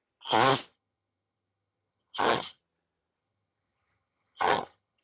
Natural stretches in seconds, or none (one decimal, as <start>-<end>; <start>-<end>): 0.0-0.7; 2.6-3.2